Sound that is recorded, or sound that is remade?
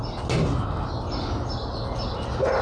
recorded